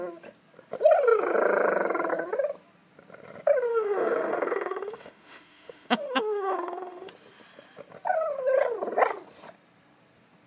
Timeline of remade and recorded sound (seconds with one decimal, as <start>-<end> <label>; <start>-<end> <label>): 0.0-3.7 recorded; 3.7-7.1 remade; 7.1-10.5 recorded